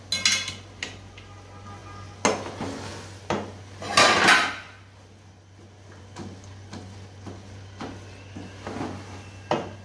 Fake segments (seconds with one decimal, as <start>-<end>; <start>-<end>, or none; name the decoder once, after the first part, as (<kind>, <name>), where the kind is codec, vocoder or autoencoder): none